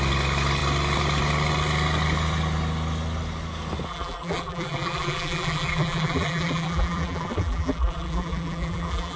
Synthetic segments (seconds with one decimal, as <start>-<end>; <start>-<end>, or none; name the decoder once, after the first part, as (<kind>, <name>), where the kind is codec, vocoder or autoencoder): 3.9-9.2 (vocoder, BigVGAN v2)

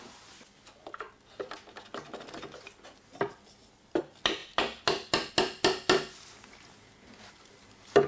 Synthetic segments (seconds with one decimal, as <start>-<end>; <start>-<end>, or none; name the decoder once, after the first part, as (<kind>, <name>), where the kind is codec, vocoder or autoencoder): none

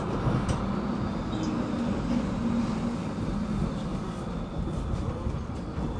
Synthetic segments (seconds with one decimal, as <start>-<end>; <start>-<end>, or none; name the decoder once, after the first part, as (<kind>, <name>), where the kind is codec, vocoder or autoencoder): 2.4-6.0 (vocoder, BigVGAN v2)

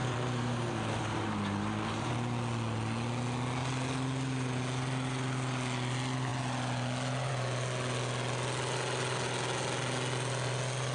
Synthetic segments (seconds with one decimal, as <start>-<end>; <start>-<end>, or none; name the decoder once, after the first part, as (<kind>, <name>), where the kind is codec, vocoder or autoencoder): 0.0-2.1 (vocoder, BigVGAN v2)